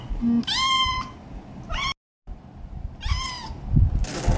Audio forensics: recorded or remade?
recorded